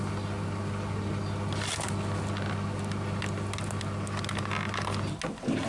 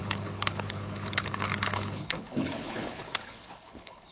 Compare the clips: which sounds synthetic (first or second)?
second